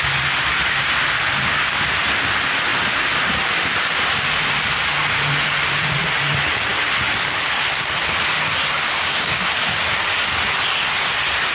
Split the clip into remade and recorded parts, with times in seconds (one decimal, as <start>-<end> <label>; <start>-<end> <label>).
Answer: 0.0-1.3 recorded; 1.3-1.8 remade; 1.8-8.8 recorded; 8.8-9.4 remade; 9.4-11.5 recorded